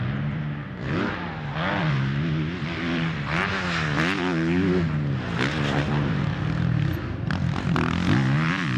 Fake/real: real